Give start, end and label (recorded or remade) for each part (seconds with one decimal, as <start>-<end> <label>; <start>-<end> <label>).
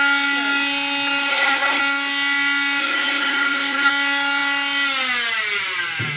0.0-1.3 recorded; 1.3-1.8 remade; 1.8-2.8 recorded; 2.8-3.9 remade; 3.9-6.2 recorded